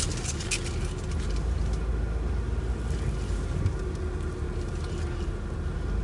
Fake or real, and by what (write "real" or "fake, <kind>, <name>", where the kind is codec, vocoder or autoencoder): real